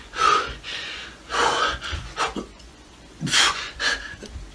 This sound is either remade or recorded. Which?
remade